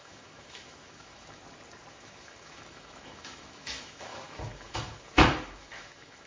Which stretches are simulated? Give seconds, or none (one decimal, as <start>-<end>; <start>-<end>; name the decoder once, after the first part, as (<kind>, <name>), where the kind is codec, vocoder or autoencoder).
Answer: 0.0-1.4 (autoencoder, DAC-VAE); 1.9-6.3